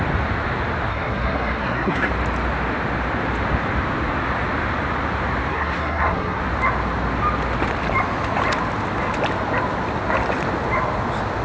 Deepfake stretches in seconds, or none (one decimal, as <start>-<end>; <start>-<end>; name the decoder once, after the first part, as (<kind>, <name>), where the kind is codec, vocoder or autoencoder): 0.9-2.1 (codec, SNAC); 5.5-6.4